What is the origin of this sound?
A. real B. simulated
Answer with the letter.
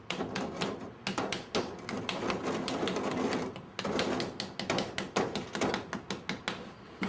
A